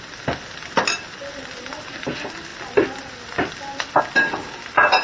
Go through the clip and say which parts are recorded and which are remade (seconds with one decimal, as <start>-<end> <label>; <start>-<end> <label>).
0.0-5.0 recorded